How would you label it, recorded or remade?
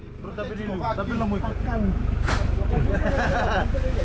recorded